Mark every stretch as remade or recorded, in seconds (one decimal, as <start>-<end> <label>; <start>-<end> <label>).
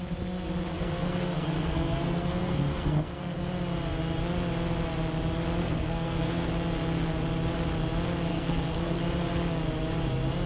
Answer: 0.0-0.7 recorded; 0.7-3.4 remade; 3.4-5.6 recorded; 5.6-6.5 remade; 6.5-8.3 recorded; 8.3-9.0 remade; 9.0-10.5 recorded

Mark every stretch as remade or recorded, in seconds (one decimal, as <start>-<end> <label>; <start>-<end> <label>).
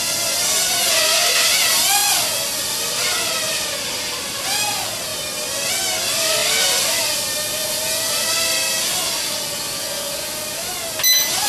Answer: 0.0-11.5 recorded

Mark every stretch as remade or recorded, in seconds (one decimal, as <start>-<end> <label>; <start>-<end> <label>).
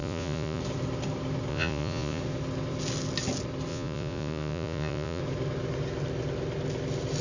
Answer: 0.0-0.6 remade; 0.6-1.5 recorded; 1.5-2.2 remade; 2.2-3.7 recorded; 3.7-5.2 remade; 5.2-7.2 recorded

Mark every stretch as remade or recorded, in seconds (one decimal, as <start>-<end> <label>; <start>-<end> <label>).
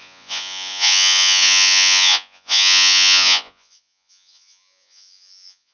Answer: 0.0-5.7 remade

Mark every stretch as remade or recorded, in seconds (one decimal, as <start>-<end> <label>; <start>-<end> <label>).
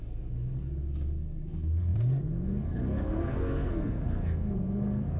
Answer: 0.0-5.2 remade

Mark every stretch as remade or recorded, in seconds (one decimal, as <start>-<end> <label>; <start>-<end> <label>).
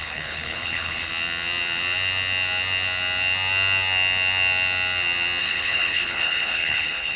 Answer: 0.0-1.1 remade; 1.1-5.4 recorded; 5.4-7.2 remade